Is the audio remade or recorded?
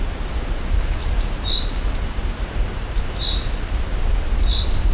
recorded